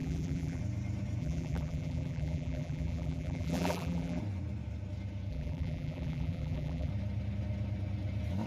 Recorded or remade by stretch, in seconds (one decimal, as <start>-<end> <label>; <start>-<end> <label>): 0.0-0.6 remade; 0.6-1.2 recorded; 1.2-4.2 remade; 4.2-5.3 recorded; 5.3-6.9 remade; 6.9-8.5 recorded

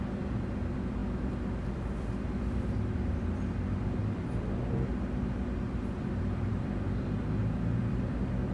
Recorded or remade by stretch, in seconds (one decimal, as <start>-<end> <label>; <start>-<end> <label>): 0.0-8.5 remade

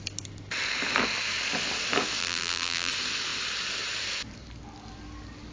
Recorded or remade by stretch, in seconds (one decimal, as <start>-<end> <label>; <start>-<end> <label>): 0.0-2.2 recorded; 2.2-2.9 remade; 2.9-5.5 recorded

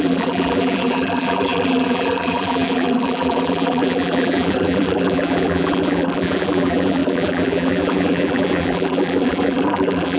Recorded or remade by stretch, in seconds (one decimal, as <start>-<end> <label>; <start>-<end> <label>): 0.0-10.2 remade

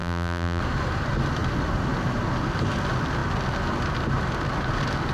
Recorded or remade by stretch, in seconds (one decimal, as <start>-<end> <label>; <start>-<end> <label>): 0.0-0.6 remade; 0.6-5.1 recorded